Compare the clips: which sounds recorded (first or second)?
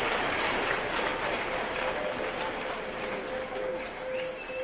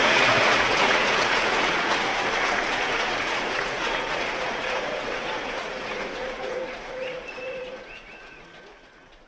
first